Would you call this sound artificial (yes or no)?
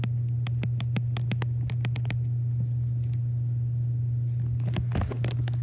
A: no